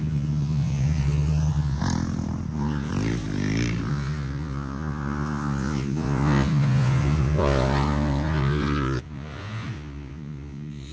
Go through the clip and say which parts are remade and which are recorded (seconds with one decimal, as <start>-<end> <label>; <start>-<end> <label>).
0.0-1.8 remade; 1.8-2.5 recorded; 2.5-2.9 remade; 2.9-3.9 recorded; 3.9-10.9 remade